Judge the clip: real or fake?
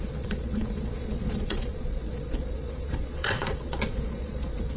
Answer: fake